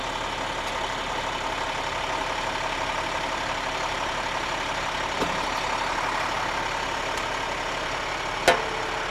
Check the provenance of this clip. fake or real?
real